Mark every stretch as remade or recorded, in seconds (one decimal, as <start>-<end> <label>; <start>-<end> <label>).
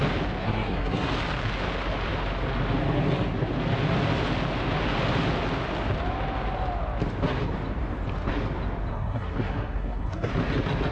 0.0-0.4 recorded; 0.4-1.1 remade; 1.1-8.9 recorded; 8.9-10.3 remade; 10.3-10.9 recorded